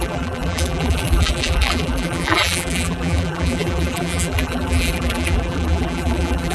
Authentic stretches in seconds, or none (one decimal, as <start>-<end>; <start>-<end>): none